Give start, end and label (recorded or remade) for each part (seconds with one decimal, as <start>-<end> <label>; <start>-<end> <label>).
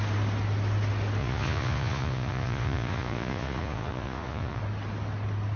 0.0-1.2 recorded; 1.2-4.6 remade; 4.6-5.6 recorded